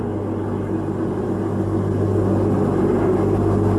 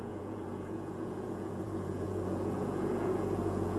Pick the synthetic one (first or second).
second